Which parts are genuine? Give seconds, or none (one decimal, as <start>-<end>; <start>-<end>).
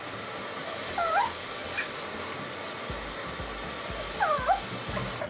0.0-5.3